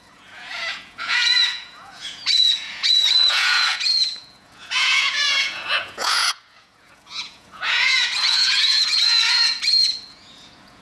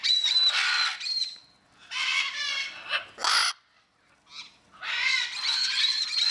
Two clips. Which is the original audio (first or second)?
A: second